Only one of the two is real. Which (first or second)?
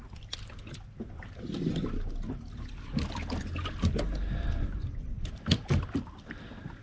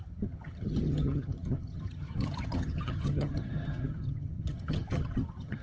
first